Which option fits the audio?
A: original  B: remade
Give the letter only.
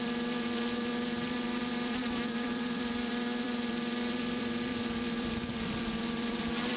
B